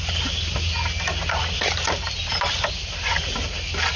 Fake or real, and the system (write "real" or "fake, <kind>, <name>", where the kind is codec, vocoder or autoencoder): real